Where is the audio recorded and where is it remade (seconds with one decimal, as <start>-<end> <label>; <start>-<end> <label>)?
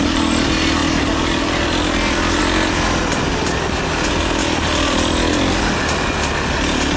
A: 0.0-0.8 recorded; 0.8-2.4 remade; 2.4-4.4 recorded; 4.4-5.8 remade; 5.8-7.0 recorded